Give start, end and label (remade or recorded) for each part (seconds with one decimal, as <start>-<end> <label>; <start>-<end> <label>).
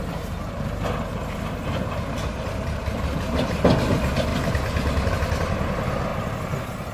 0.0-1.1 recorded; 1.1-3.6 remade; 3.6-6.9 recorded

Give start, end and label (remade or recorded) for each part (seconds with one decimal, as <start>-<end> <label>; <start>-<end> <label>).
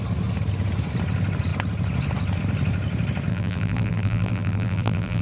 0.0-3.3 recorded; 3.3-5.2 remade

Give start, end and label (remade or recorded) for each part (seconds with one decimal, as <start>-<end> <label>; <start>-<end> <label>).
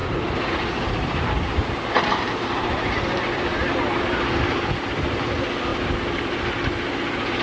0.0-4.4 remade; 4.4-5.7 recorded; 5.7-6.2 remade; 6.2-7.4 recorded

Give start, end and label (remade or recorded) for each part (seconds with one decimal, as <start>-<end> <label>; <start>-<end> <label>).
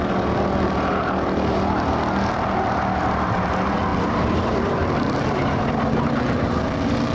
0.0-3.9 recorded; 3.9-5.9 remade; 5.9-7.1 recorded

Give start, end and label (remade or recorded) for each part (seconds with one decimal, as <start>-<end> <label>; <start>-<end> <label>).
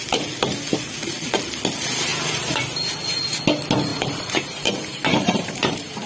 0.0-2.1 recorded; 2.1-2.6 remade; 2.6-3.9 recorded; 3.9-6.1 remade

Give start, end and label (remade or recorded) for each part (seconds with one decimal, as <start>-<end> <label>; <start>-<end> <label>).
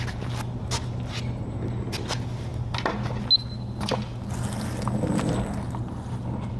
0.0-6.6 recorded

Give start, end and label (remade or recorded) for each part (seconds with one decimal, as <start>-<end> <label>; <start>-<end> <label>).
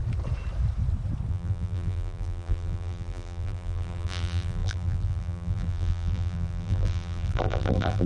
0.0-1.3 recorded; 1.3-8.1 remade